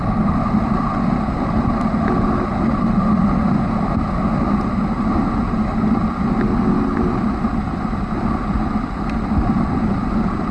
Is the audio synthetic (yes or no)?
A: no